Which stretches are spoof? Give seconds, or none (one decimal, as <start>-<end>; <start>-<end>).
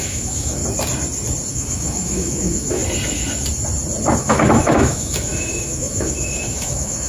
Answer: 0.0-0.6; 1.5-2.8; 4.2-7.1